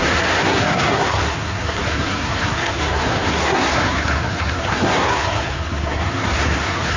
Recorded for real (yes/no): no